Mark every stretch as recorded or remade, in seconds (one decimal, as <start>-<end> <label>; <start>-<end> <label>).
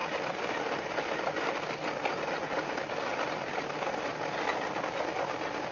0.0-5.7 recorded